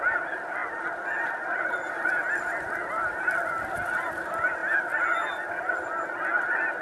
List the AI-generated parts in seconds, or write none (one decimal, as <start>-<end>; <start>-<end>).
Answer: none